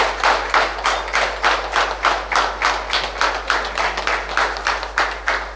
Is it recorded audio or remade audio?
recorded